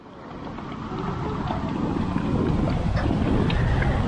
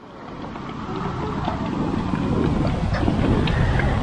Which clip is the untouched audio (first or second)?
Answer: second